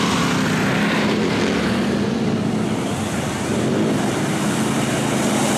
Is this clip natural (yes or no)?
yes